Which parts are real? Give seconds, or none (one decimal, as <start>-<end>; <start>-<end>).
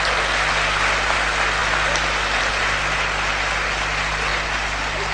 0.0-5.1